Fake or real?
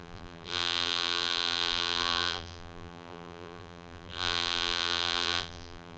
fake